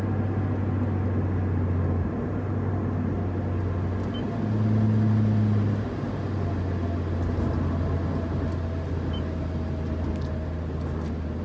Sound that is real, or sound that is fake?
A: real